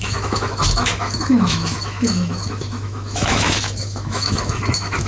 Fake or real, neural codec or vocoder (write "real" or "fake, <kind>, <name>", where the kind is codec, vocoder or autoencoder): fake, autoencoder, DAC-VAE